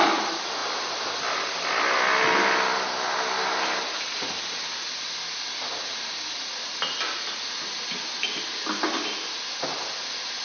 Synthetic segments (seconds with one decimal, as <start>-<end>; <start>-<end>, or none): none